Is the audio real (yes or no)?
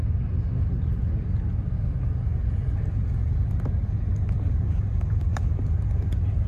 yes